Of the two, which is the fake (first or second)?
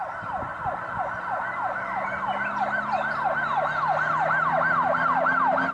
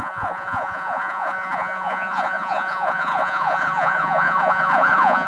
second